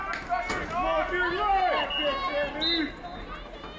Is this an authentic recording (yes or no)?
yes